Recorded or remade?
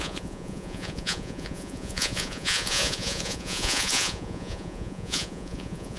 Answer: remade